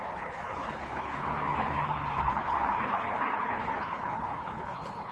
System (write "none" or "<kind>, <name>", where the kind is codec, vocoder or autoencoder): codec, HILCodec